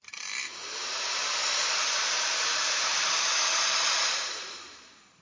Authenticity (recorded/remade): remade